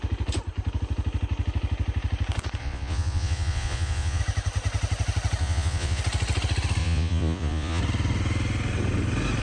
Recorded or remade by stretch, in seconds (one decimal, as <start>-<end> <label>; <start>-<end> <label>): 0.0-2.6 recorded; 2.6-4.2 remade; 4.2-5.4 recorded; 5.4-6.0 remade; 6.0-6.8 recorded; 6.8-7.8 remade; 7.8-9.4 recorded